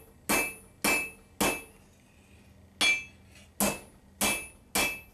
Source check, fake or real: real